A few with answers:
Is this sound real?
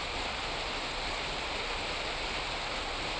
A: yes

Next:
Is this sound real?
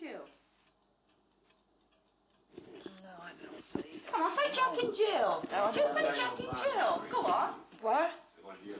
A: yes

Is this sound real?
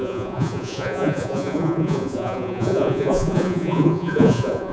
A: no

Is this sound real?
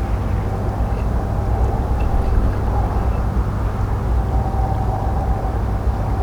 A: yes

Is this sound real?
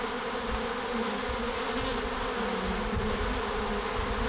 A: yes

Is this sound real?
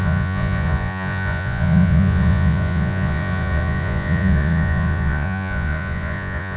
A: no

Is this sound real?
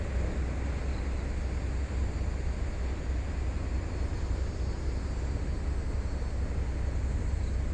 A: yes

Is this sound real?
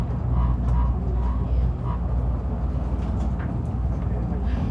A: yes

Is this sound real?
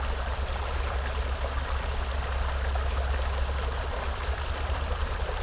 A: yes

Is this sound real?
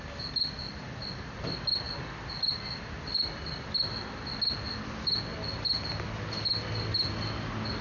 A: yes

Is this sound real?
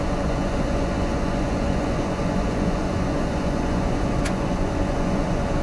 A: no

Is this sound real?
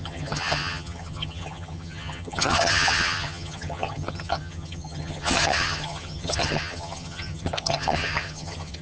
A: no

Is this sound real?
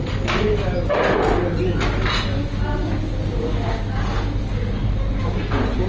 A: yes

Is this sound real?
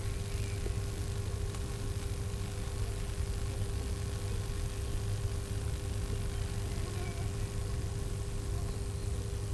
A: yes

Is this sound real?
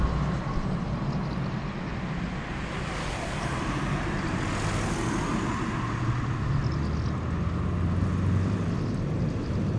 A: yes